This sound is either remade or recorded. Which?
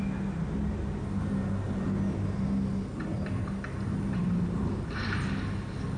recorded